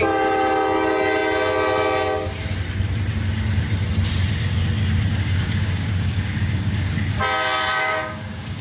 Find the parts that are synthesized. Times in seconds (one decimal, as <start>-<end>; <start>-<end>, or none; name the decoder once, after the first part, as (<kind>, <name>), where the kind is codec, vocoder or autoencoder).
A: 5.1-6.9 (codec, DAC); 7.7-8.6